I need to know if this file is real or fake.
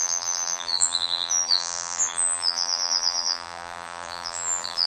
fake